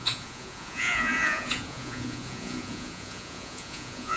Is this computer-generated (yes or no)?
yes